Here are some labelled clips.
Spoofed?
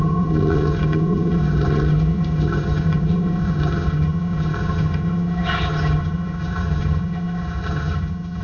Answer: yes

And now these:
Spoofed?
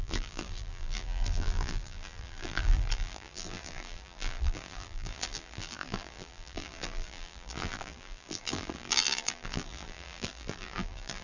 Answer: yes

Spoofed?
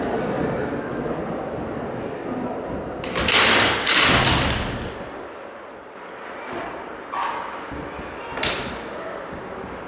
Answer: no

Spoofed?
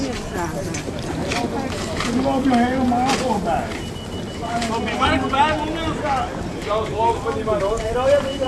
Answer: no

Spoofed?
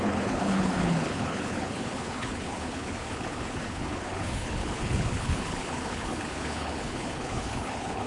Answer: yes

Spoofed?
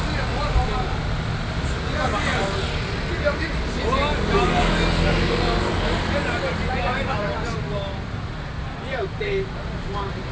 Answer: no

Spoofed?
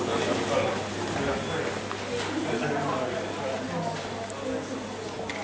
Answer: no